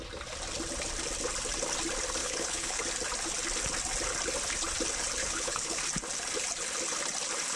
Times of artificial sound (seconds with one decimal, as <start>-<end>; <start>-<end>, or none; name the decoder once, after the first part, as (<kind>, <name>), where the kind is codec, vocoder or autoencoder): 2.2-2.8 (codec, HILCodec); 5.2-5.8

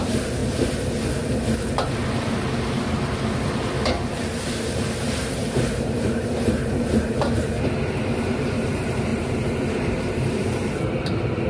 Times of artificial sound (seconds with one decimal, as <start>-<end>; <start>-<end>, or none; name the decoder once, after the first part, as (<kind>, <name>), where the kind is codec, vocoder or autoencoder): 0.0-0.4 (vocoder, BigVGAN v2); 2.1-11.5

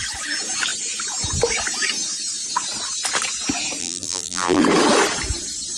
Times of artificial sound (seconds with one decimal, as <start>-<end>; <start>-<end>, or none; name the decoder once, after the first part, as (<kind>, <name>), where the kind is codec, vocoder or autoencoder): 3.8-4.6 (vocoder, BigVGAN v2)

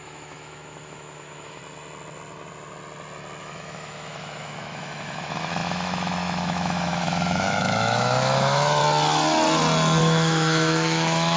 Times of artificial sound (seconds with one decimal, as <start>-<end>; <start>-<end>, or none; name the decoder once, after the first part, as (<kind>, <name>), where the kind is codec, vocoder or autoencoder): 0.0-1.6 (autoencoder, DAC-VAE); 3.4-8.8; 10.0-11.4